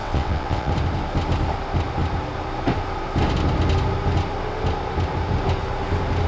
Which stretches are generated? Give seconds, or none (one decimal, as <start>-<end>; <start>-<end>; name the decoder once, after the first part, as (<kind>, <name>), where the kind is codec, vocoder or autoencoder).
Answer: 0.0-0.7 (vocoder, WaveNeXt)